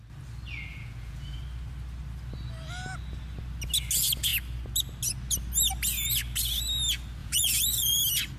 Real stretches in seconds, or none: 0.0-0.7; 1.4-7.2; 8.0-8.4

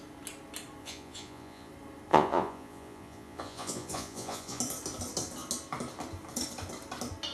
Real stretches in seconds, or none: 0.0-0.8; 1.7-2.1; 4.6-7.3